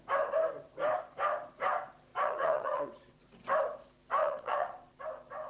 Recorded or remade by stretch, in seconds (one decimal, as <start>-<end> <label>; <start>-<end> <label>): 0.0-2.1 recorded; 2.1-3.2 remade; 3.2-4.2 recorded; 4.2-5.0 remade; 5.0-5.5 recorded